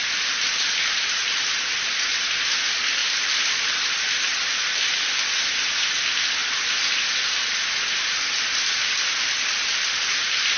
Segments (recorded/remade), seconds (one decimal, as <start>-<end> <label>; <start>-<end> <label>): 0.0-10.6 recorded